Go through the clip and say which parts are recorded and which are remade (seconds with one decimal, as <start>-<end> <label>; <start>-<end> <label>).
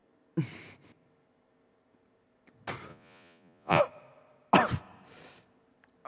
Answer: 0.0-2.9 recorded; 2.9-3.8 remade; 3.8-6.1 recorded